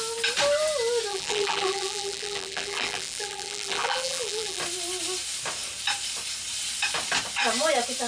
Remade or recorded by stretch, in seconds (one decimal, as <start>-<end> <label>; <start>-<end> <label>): 0.0-1.1 recorded; 1.1-4.6 remade; 4.6-8.1 recorded